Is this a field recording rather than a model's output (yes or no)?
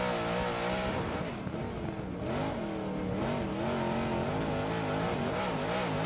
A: yes